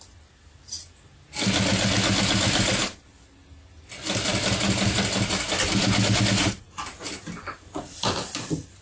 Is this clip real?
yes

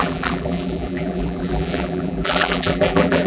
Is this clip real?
no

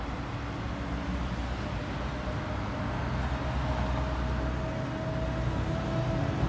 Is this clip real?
yes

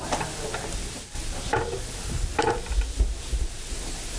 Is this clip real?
yes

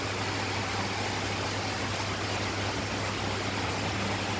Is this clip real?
yes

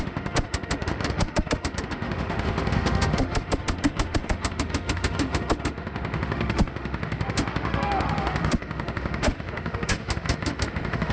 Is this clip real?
no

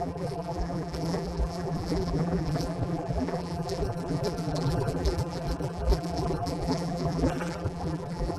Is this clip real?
no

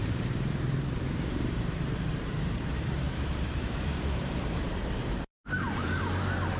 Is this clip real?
no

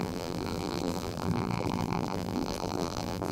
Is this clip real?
no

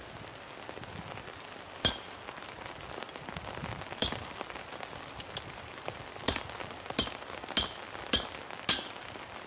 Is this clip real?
yes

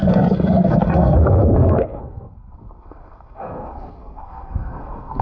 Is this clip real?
no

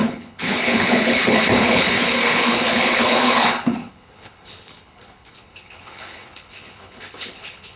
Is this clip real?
no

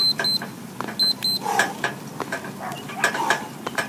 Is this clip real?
yes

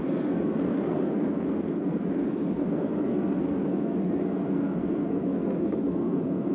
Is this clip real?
no